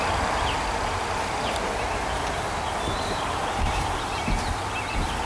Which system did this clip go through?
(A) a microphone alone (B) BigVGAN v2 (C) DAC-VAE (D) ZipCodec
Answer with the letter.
A